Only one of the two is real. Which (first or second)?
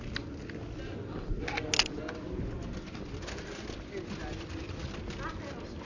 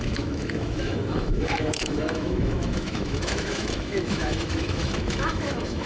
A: first